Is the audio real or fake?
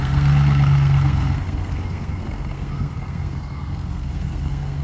fake